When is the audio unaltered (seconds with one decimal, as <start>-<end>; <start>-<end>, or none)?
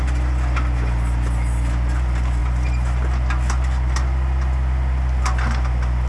0.0-6.1